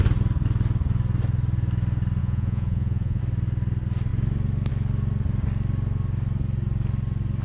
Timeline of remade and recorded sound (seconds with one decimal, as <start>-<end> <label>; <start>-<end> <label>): 0.0-2.2 recorded; 2.2-3.2 remade; 3.2-7.4 recorded